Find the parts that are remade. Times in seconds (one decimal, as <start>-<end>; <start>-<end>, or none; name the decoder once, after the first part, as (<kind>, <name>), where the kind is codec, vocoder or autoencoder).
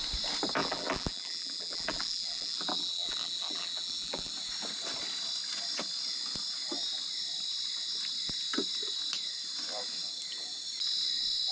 0.6-4.3 (vocoder, BigVGAN v2)